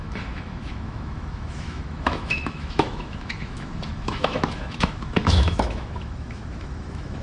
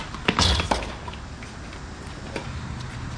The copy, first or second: first